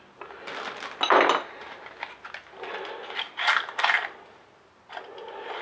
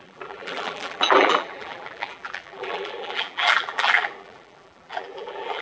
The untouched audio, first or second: first